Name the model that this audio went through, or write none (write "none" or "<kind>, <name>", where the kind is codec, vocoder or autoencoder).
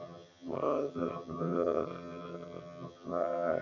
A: vocoder, HiFi-GAN